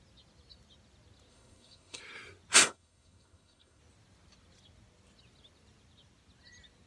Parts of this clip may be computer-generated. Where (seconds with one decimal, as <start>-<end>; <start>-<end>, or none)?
1.3-2.0; 2.6-3.8